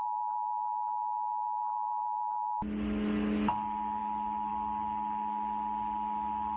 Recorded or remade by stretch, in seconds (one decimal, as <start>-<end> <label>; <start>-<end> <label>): 0.0-6.6 recorded

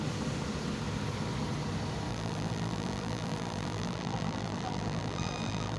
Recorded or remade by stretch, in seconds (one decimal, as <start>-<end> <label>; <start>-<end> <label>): 0.0-2.1 recorded; 2.1-5.8 remade

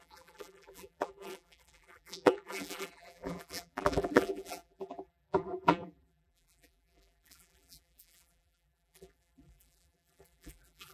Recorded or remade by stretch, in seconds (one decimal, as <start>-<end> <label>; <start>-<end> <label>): 0.0-10.9 remade

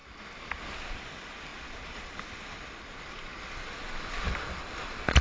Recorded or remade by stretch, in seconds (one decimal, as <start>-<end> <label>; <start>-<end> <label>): 0.0-5.2 recorded